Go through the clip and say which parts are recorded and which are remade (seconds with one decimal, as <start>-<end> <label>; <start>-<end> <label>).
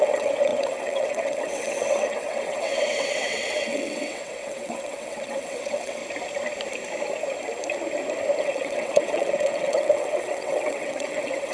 0.0-6.0 remade; 6.0-8.4 recorded; 8.4-11.5 remade